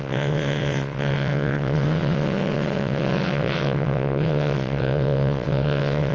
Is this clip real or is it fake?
fake